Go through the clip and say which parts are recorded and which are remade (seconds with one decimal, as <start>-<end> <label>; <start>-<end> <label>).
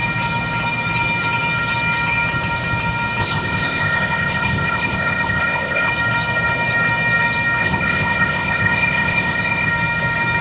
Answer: 0.0-3.2 recorded; 3.2-5.9 remade; 5.9-7.6 recorded; 7.6-9.7 remade; 9.7-10.4 recorded